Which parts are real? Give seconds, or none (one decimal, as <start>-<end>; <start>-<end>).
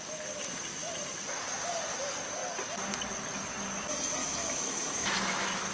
0.0-4.2